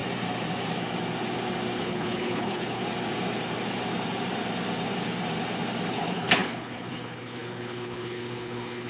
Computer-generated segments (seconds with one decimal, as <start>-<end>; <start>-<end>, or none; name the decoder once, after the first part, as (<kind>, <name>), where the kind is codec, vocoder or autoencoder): 1.8-2.8 (codec, HILCodec); 5.9-8.9